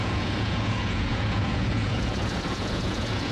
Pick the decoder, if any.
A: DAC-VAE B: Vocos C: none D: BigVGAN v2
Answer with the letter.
B